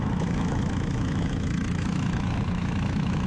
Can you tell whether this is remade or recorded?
remade